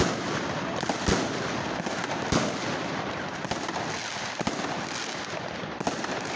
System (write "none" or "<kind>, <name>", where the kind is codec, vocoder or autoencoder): none